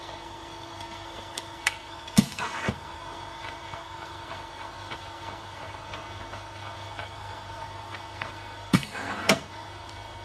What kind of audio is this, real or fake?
fake